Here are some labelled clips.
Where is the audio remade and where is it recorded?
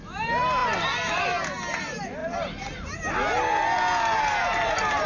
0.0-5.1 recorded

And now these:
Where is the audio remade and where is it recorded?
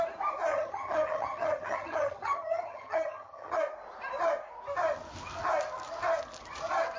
0.0-0.5 recorded; 0.5-3.6 remade; 3.6-7.0 recorded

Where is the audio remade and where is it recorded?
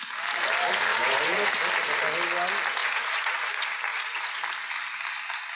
0.0-0.9 recorded; 0.9-1.5 remade; 1.5-2.8 recorded; 2.8-3.5 remade; 3.5-3.9 recorded; 3.9-4.4 remade; 4.4-5.5 recorded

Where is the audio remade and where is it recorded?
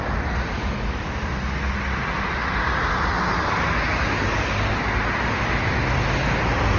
0.0-6.8 recorded